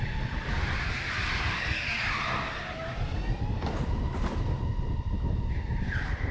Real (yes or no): yes